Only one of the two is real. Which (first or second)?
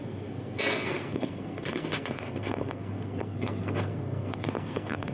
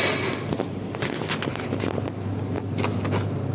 second